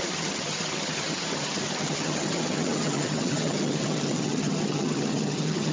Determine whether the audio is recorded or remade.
remade